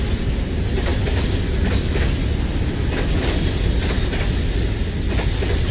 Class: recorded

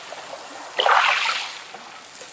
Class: recorded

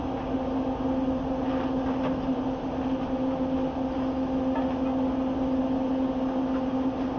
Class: recorded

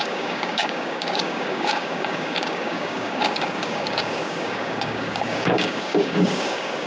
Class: remade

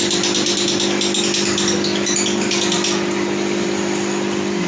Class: recorded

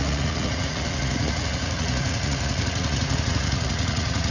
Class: remade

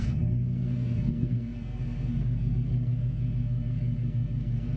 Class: remade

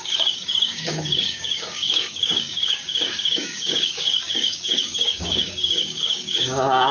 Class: remade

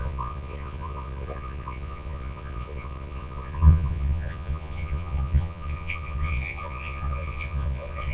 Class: remade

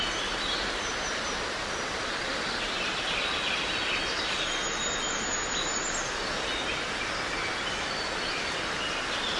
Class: recorded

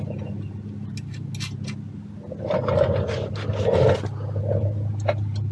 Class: recorded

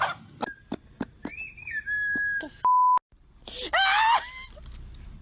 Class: recorded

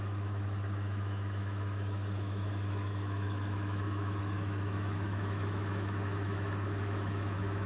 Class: remade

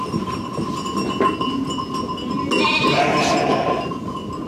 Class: recorded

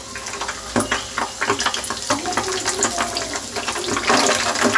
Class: recorded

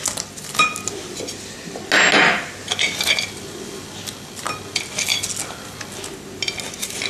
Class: recorded